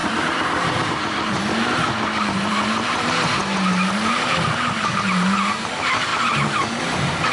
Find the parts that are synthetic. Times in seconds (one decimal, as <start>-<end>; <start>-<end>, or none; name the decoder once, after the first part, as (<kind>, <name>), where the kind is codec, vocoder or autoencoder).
0.0-6.1 (vocoder, BigVGAN v2); 6.8-7.3

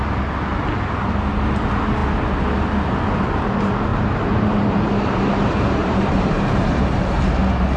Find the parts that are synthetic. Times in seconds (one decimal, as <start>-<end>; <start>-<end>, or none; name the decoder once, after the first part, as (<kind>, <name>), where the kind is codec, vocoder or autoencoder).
3.9-4.9 (vocoder, BigVGAN v2); 5.8-6.8

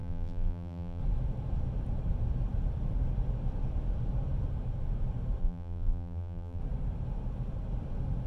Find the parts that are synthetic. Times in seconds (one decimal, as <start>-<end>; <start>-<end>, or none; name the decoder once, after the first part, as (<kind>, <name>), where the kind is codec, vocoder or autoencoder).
0.0-1.0 (vocoder, BigVGAN v2); 5.4-6.6

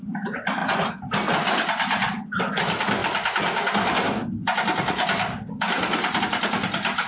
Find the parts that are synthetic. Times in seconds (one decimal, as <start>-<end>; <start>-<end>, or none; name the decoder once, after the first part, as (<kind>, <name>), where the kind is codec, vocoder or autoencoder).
0.0-3.0 (vocoder, BigVGAN v2); 6.2-7.1

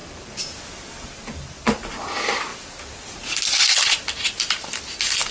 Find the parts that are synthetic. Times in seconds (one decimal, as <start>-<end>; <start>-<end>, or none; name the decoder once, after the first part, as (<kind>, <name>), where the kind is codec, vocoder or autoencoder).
0.0-0.7 (vocoder, BigVGAN v2); 2.5-3.9

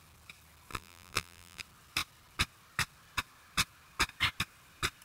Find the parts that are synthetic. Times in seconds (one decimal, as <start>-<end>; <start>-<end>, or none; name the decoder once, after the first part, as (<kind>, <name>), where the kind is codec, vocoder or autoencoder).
0.7-1.6 (vocoder, BigVGAN v2)

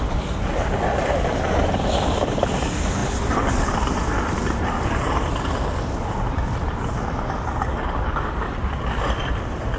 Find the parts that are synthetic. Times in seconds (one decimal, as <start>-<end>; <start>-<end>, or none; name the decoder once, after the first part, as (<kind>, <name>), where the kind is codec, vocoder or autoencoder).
3.0-5.2 (vocoder, BigVGAN v2)